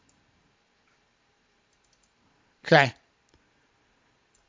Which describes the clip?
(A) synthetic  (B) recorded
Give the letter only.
B